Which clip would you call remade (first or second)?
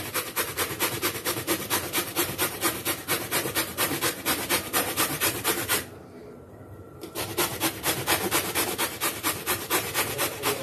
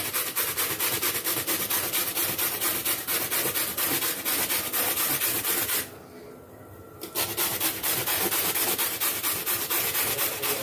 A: first